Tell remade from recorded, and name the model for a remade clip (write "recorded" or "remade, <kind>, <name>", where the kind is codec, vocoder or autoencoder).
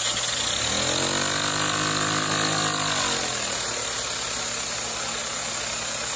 recorded